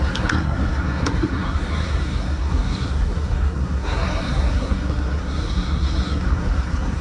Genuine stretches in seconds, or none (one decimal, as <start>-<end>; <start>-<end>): none